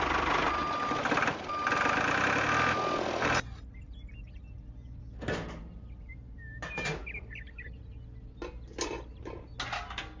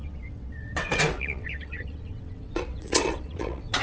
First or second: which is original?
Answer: first